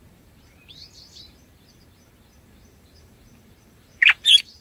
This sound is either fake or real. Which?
fake